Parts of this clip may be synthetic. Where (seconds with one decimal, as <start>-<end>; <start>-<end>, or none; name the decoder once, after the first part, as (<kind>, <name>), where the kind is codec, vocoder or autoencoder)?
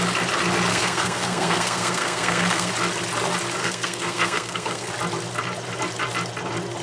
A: 0.7-2.7 (codec, SNAC); 3.6-4.9